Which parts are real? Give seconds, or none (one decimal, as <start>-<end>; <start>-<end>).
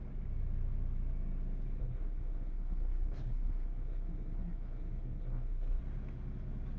0.0-1.8; 5.8-6.8